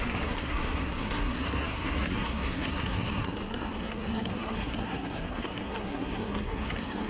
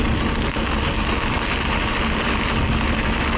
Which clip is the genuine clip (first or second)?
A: second